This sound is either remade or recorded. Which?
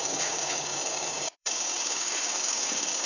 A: remade